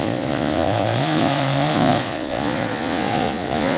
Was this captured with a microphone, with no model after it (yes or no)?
no